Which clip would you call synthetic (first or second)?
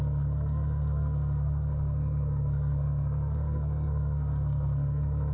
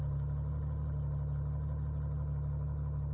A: first